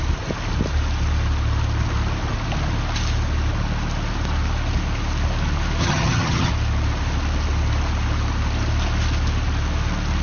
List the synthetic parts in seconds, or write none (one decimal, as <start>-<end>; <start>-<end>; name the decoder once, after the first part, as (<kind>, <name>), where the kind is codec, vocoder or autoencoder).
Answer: 5.8-6.5 (vocoder, HiFi-GAN)